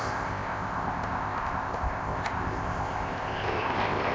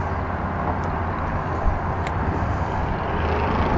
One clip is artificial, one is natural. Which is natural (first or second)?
second